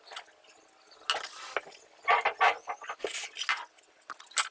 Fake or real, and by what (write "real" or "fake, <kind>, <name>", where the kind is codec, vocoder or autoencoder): real